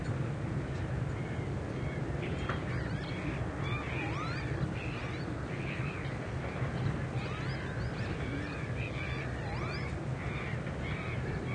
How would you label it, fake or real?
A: fake